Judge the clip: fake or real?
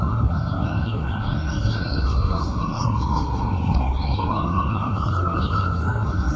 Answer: fake